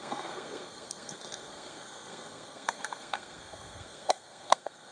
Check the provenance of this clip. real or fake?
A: fake